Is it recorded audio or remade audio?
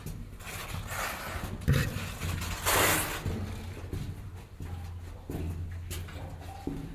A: recorded